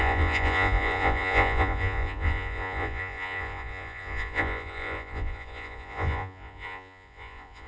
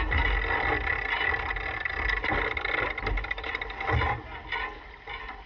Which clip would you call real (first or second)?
second